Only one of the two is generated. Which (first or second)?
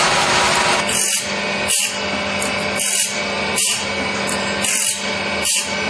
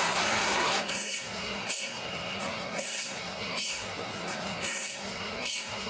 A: second